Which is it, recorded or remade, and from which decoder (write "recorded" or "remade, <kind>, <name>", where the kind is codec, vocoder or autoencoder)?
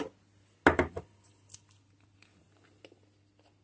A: recorded